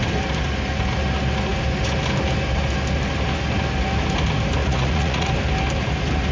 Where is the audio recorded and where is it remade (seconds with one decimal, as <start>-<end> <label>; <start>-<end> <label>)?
0.0-4.6 recorded; 4.6-5.3 remade; 5.3-6.3 recorded